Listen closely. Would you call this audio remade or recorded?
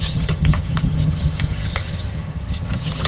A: remade